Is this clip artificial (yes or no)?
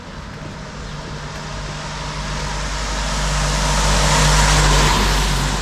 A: no